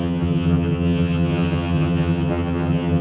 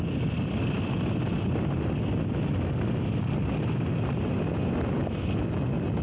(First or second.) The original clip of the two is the second